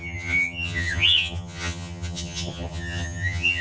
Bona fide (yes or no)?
no